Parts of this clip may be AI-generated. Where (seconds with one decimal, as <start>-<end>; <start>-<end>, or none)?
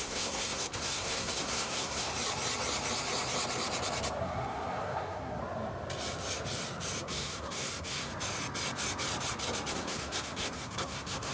0.0-2.1; 4.2-5.4; 7.0-8.1; 9.7-11.3